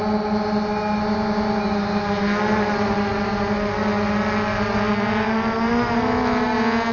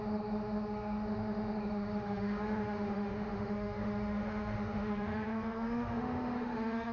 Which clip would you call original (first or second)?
first